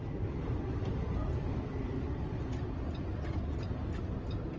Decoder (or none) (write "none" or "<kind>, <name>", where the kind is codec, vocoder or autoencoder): none